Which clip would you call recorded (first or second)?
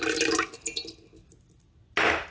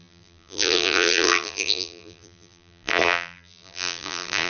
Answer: first